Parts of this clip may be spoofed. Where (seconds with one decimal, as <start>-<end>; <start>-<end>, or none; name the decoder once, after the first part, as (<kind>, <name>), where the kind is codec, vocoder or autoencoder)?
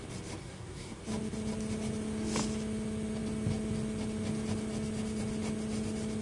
0.4-1.0 (codec, SNAC)